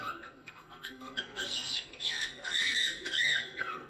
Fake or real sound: fake